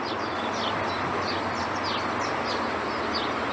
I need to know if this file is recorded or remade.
recorded